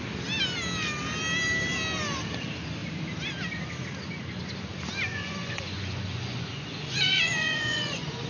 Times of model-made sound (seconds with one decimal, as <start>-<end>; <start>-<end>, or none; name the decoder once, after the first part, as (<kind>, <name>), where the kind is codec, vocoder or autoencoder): 5.1-8.3 (vocoder, Vocos)